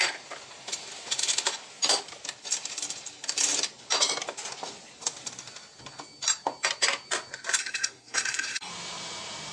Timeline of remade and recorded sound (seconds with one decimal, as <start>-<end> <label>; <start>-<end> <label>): 0.0-7.6 recorded; 7.6-8.7 remade; 8.7-9.5 recorded